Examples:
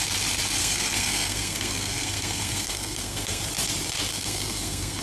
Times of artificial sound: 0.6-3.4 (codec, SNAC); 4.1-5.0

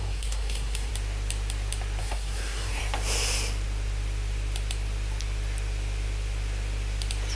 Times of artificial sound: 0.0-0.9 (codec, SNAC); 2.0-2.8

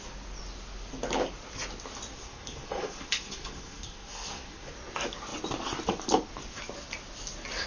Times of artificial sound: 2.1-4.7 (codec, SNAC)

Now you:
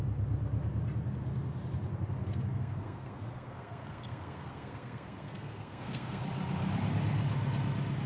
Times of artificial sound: 2.2-6.2 (codec, SNAC)

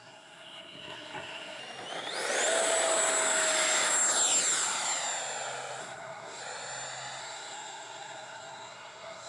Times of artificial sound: 0.0-1.6 (codec, SNAC); 5.8-6.4; 7.2-9.3

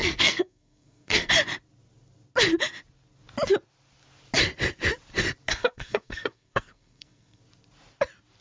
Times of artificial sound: 0.0-1.3 (codec, SNAC); 5.5-7.4

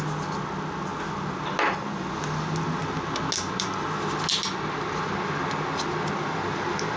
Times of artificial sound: none

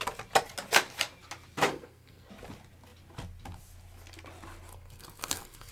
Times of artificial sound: 1.7-2.3 (codec, SNAC); 4.7-5.7